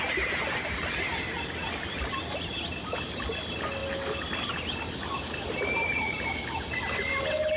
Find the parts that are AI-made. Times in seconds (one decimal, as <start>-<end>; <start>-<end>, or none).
none